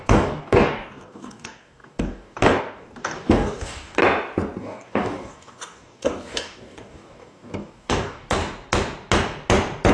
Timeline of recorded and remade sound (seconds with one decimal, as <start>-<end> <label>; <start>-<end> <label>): 0.0-4.0 remade; 4.0-4.6 recorded; 4.6-8.4 remade; 8.4-9.9 recorded